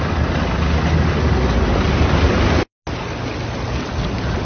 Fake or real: real